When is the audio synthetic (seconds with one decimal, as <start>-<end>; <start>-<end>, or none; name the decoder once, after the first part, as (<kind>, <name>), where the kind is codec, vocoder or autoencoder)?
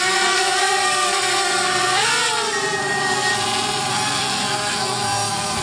0.0-2.1 (codec, SNAC); 2.8-3.3; 3.9-5.6